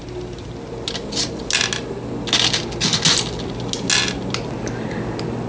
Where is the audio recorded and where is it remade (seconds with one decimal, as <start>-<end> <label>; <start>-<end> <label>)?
0.0-5.5 recorded